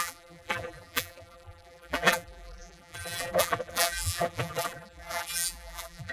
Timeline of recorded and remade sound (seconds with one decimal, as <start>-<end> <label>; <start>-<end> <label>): 0.0-6.1 remade